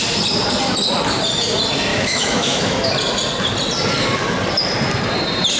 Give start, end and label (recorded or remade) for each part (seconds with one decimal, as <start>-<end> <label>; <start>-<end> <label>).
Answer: 0.0-1.9 recorded; 1.9-2.9 remade; 2.9-5.6 recorded